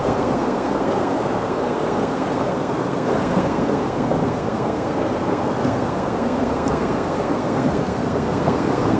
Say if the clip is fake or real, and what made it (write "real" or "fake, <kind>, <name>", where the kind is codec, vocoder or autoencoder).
fake, codec, SNAC